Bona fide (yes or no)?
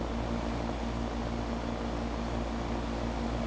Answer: yes